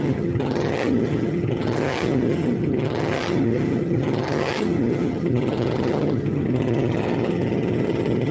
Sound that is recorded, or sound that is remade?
remade